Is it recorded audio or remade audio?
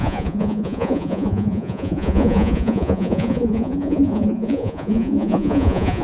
remade